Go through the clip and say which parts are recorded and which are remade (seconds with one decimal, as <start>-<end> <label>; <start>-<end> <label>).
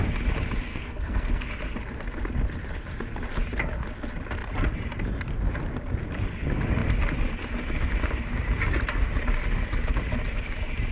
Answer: 0.0-0.7 recorded; 0.7-1.5 remade; 1.5-10.9 recorded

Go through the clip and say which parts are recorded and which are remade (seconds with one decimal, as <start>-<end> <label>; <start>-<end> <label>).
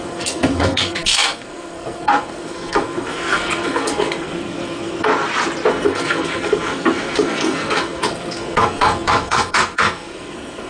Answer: 0.0-5.1 remade; 5.1-5.7 recorded; 5.7-10.7 remade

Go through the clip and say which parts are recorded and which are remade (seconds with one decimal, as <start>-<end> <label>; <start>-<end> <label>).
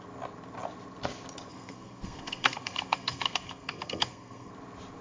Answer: 0.0-1.5 recorded; 1.5-4.5 remade; 4.5-5.0 recorded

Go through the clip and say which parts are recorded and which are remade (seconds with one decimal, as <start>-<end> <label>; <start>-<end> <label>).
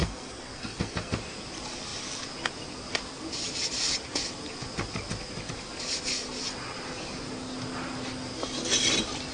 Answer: 0.0-1.2 remade; 1.2-9.3 recorded